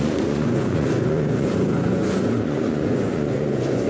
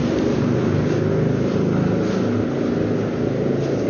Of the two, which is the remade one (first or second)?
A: first